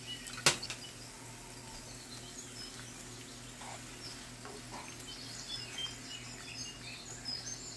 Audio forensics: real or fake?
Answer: real